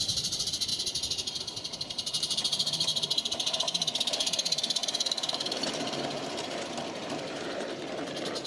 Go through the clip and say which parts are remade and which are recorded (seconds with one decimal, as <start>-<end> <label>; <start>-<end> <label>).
0.0-0.7 remade; 0.7-1.4 recorded; 1.4-8.5 remade

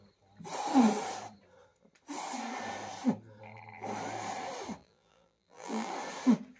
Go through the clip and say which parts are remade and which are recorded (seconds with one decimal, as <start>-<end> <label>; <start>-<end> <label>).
0.0-4.8 recorded; 4.8-5.9 remade; 5.9-6.6 recorded

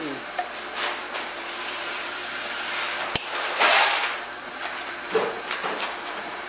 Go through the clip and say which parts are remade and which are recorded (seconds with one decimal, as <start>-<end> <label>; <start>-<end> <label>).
0.0-0.4 remade; 0.4-1.0 recorded; 1.0-2.2 remade; 2.2-3.2 recorded; 3.2-6.5 remade

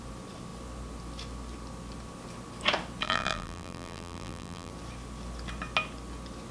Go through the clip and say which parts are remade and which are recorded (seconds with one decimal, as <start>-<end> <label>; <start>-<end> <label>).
0.0-3.0 recorded; 3.0-4.7 remade; 4.7-6.5 recorded

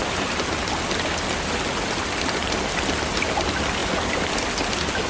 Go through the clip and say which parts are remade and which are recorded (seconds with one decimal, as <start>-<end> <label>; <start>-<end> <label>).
0.0-5.1 recorded

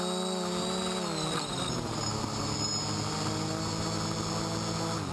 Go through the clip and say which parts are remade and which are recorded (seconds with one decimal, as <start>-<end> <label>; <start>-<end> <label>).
0.0-5.1 recorded